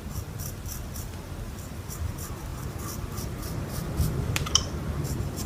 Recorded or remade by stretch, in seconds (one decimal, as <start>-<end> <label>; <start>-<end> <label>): 0.0-5.5 remade